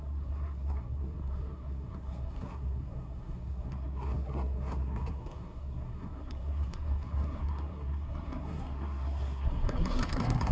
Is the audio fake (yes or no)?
yes